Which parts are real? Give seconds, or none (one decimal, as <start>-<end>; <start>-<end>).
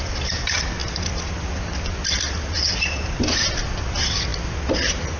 0.0-5.2